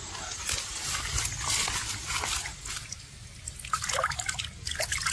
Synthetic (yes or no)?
no